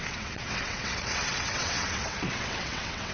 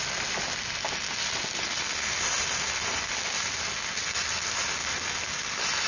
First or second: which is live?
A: second